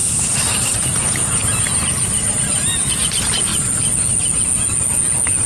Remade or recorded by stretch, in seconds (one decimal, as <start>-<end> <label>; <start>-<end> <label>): 0.0-5.5 recorded